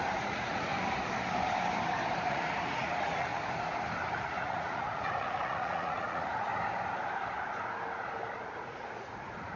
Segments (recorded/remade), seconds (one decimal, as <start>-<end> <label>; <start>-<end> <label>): 0.0-0.7 remade; 0.7-2.3 recorded; 2.3-3.3 remade; 3.3-4.2 recorded; 4.2-6.5 remade; 6.5-8.5 recorded; 8.5-9.6 remade